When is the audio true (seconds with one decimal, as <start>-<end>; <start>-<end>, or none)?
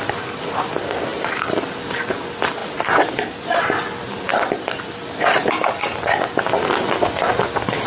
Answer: 0.0-7.9